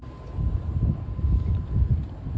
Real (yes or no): yes